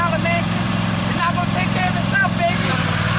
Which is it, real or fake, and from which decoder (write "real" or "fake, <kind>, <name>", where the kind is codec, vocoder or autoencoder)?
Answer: fake, vocoder, BigVGAN v2